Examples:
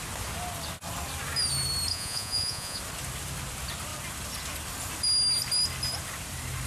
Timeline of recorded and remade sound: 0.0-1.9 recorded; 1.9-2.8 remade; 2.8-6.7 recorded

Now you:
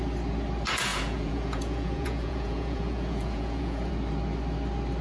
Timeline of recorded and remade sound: 0.0-0.9 recorded; 0.9-3.9 remade; 3.9-5.0 recorded

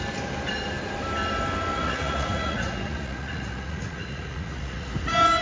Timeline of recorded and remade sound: 0.0-1.7 recorded; 1.7-4.9 remade; 4.9-5.4 recorded

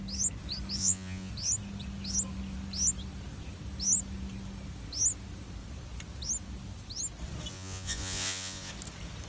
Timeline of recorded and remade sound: 0.0-0.8 recorded; 0.8-1.3 remade; 1.3-7.5 recorded; 7.5-8.7 remade; 8.7-9.3 recorded